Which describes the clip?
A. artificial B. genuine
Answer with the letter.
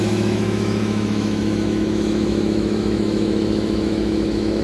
A